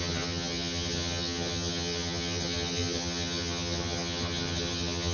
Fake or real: fake